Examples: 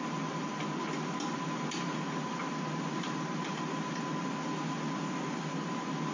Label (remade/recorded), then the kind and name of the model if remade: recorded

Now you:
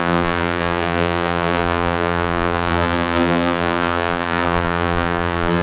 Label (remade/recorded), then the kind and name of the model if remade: remade, vocoder, BigVGAN v2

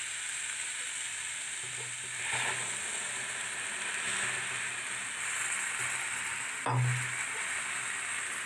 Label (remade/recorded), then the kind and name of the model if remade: recorded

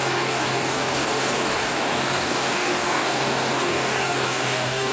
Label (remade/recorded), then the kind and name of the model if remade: remade, codec, DAC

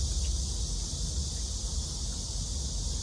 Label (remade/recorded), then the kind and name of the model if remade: recorded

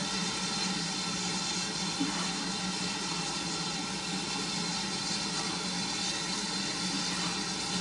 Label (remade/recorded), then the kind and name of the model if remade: recorded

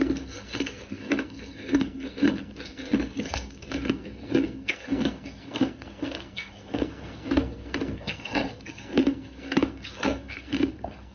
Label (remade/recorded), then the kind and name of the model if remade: remade, codec, SNAC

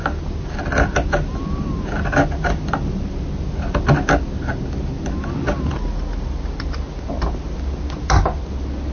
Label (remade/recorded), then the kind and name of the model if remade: recorded